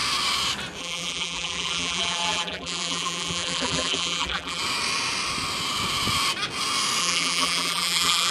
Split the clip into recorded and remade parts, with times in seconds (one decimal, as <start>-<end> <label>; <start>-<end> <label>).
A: 0.0-0.8 recorded; 0.8-4.6 remade; 4.6-7.0 recorded; 7.0-8.3 remade